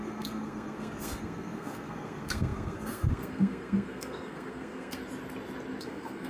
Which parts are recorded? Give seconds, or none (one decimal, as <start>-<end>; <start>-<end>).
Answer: 5.0-5.8